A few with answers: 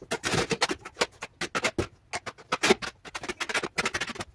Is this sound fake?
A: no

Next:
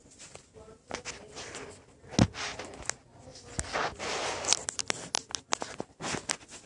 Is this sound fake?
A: no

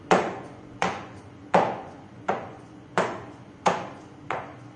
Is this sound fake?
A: yes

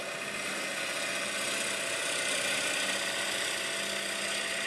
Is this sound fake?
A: no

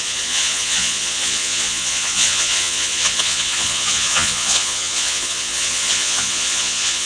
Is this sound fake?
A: yes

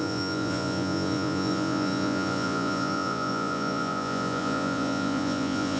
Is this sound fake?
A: yes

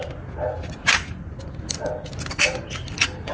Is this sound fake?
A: no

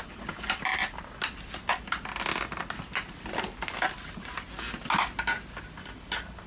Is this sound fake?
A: no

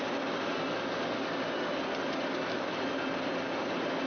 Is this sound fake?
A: no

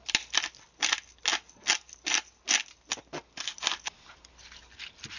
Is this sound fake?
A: no